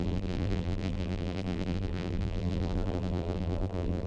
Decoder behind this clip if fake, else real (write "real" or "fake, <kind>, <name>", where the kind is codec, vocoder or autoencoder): fake, vocoder, BigVGAN v2